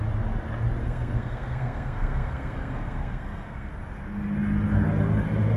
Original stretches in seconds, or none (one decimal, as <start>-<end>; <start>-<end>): 0.0-0.8; 3.7-5.6